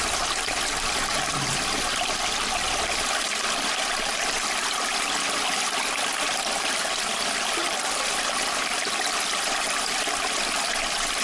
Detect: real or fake real